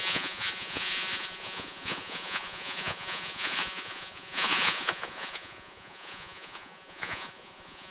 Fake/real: fake